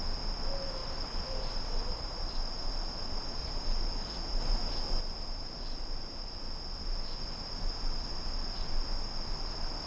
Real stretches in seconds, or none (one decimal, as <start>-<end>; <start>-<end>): 0.0-0.8; 2.7-3.4; 4.6-9.9